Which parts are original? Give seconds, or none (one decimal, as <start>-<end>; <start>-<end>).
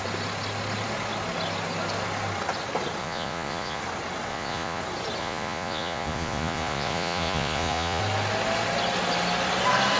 0.0-3.0; 3.8-4.3; 4.8-5.2; 8.0-10.0